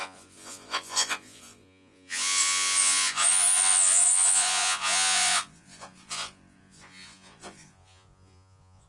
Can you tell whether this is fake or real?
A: fake